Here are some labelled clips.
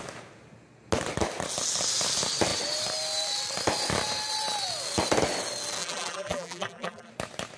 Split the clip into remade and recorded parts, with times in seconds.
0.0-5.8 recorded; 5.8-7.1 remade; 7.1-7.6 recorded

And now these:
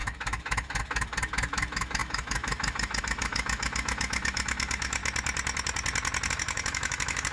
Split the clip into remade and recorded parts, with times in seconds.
0.0-5.0 remade; 5.0-6.3 recorded; 6.3-7.3 remade

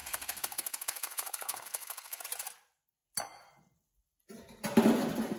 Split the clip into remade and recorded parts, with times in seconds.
0.0-2.2 remade; 2.2-5.4 recorded

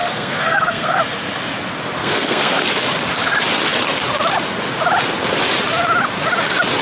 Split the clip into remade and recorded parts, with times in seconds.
0.0-1.0 remade; 1.0-2.0 recorded; 2.0-2.6 remade; 2.6-6.8 recorded

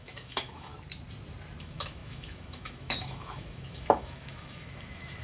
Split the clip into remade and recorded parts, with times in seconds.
0.0-0.7 remade; 0.7-1.6 recorded; 1.6-5.2 remade

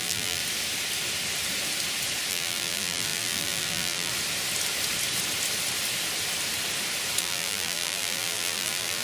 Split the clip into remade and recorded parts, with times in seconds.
0.0-0.4 remade; 0.4-2.3 recorded; 2.3-4.1 remade; 4.1-7.2 recorded; 7.2-9.0 remade

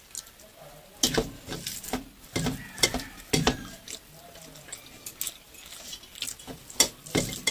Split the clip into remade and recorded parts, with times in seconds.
0.0-7.5 recorded

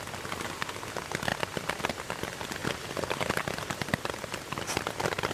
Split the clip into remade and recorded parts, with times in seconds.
0.0-5.3 recorded